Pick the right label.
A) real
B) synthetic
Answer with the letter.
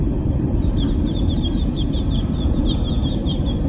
B